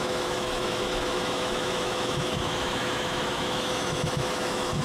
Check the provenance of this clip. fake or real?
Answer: fake